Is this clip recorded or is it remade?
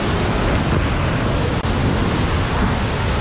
recorded